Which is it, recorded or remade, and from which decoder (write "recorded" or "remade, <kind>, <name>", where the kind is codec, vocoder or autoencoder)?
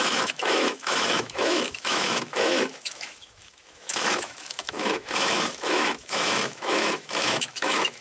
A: remade, autoencoder, DAC-VAE